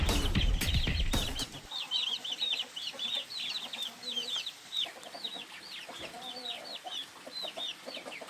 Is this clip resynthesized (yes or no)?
no